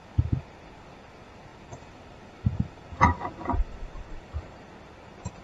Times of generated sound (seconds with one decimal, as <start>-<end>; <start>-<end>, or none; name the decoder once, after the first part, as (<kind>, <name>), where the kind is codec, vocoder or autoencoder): 1.5-4.7 (vocoder, BigVGAN v2)